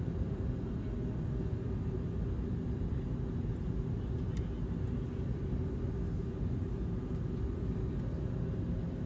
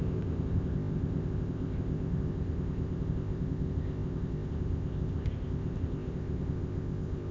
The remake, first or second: second